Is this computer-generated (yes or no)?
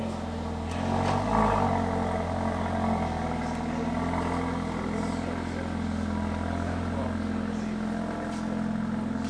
no